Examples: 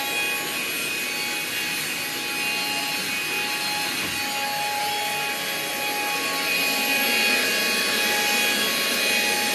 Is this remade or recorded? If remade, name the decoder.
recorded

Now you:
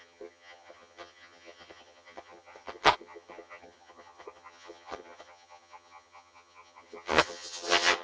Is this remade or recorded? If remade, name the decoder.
remade, vocoder, HiFi-GAN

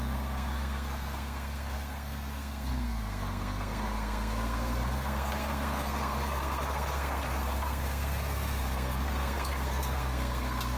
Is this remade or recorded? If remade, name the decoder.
remade, codec, SNAC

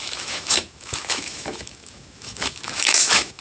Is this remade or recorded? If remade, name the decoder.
remade, autoencoder, DAC-VAE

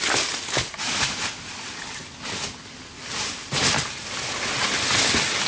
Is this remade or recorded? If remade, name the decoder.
recorded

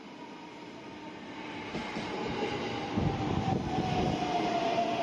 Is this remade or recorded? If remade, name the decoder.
recorded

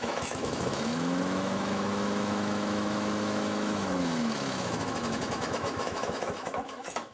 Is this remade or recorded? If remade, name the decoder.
remade, autoencoder, DAC-VAE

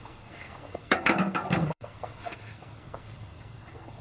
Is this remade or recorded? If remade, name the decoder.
remade, codec, SNAC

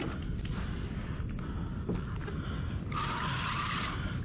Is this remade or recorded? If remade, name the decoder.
recorded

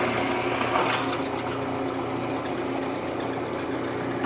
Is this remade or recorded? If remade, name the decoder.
recorded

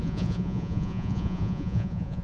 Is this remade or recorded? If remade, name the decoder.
remade, vocoder, Vocos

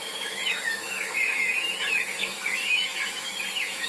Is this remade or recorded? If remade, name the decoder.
remade, autoencoder, DAC-VAE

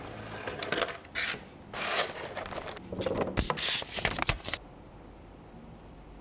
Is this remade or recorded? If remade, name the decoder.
recorded